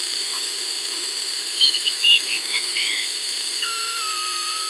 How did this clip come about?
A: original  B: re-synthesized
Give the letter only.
B